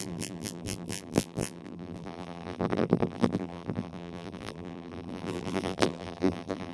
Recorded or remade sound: remade